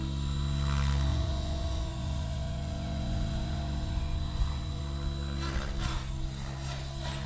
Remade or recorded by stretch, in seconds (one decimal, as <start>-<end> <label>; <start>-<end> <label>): 0.0-1.1 recorded; 1.1-4.8 remade; 4.8-7.3 recorded